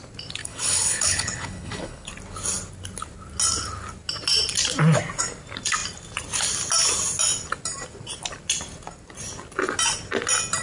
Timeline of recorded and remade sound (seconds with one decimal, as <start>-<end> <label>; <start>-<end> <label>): 0.0-0.4 recorded; 0.4-2.1 remade; 2.1-10.6 recorded